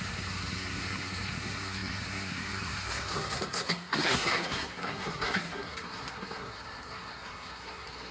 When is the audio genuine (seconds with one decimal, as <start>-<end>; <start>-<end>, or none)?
none